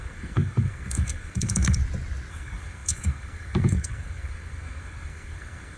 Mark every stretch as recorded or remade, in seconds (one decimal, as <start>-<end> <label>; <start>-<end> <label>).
0.0-1.8 remade; 1.8-2.3 recorded; 2.3-5.8 remade